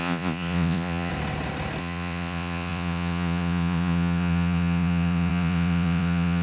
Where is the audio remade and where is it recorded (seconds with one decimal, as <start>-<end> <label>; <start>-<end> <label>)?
0.0-1.1 remade; 1.1-1.8 recorded; 1.8-6.4 remade